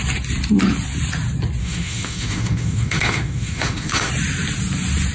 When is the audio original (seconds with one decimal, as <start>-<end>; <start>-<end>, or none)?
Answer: 0.0-1.6; 4.1-5.1